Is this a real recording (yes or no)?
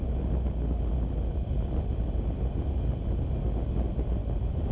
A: yes